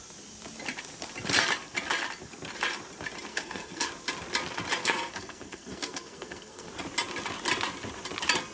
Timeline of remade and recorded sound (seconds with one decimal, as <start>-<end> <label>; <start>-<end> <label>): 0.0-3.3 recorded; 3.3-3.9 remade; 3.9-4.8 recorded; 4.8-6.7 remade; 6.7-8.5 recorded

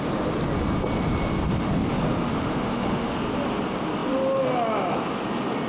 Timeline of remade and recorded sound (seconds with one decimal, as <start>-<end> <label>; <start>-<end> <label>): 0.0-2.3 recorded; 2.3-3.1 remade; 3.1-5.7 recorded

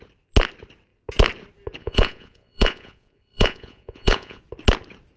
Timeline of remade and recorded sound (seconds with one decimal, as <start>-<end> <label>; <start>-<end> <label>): 0.0-1.8 recorded; 1.8-4.4 remade; 4.4-5.2 recorded

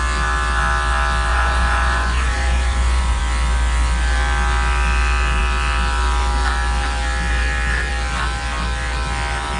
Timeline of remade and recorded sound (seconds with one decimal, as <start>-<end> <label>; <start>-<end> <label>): 0.0-1.3 recorded; 1.3-3.2 remade; 3.2-9.6 recorded